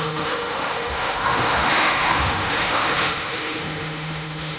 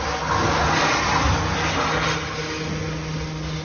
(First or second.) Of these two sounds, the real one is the second